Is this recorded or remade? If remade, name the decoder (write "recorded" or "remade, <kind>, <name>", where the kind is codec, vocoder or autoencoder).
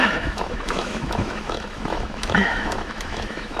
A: remade, autoencoder, DAC-VAE